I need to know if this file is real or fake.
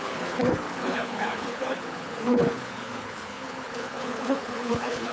fake